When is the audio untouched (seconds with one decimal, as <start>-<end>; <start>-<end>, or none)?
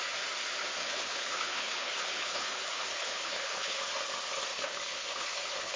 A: 0.0-0.8; 3.8-4.5